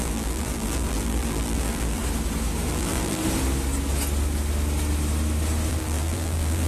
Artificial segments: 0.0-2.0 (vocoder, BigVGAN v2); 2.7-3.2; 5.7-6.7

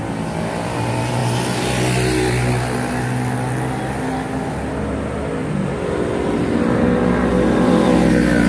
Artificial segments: none

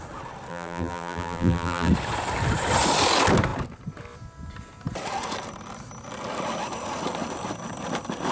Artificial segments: 0.5-1.9 (vocoder, BigVGAN v2)

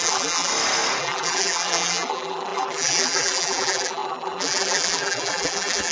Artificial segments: 0.0-0.5 (vocoder, BigVGAN v2); 1.0-5.9

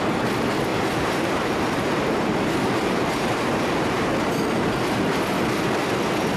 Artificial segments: 0.7-4.1 (vocoder, BigVGAN v2)